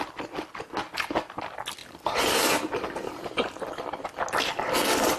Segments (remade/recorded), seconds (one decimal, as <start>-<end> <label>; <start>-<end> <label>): 0.0-5.2 recorded